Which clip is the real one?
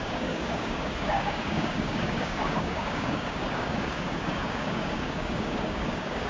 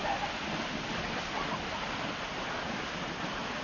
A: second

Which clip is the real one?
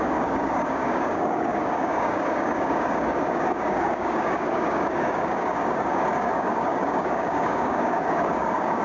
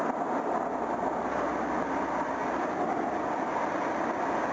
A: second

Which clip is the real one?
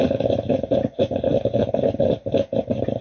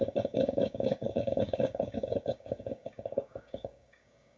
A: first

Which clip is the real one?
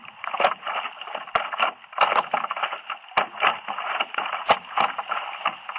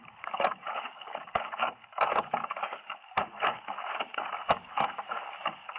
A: first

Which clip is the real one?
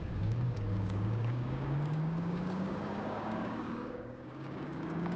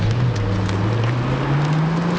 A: second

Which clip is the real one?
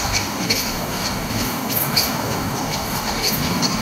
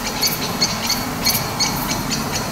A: second